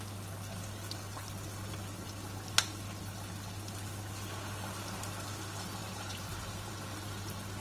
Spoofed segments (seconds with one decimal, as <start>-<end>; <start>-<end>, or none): 5.8-6.7